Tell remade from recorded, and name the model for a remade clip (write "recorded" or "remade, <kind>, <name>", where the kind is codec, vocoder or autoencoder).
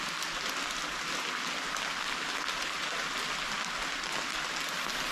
recorded